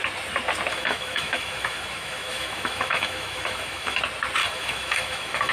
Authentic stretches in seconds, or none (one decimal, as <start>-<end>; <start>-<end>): 0.0-0.7; 4.0-4.4